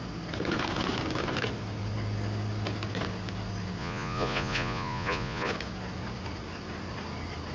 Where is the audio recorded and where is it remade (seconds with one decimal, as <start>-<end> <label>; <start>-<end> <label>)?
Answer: 0.0-3.8 recorded; 3.8-5.5 remade; 5.5-7.5 recorded